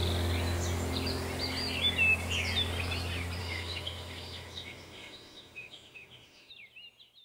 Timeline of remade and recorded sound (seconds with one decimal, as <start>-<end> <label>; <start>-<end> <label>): 0.0-3.4 recorded; 3.4-6.5 remade; 6.5-7.2 recorded